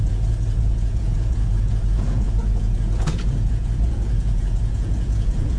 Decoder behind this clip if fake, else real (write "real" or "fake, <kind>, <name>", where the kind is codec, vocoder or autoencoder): fake, vocoder, Vocos